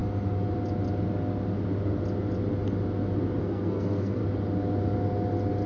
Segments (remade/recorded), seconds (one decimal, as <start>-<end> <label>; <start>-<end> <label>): 0.0-3.4 recorded; 3.4-4.2 remade; 4.2-5.7 recorded